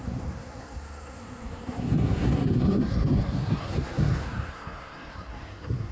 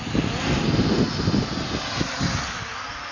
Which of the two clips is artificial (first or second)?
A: first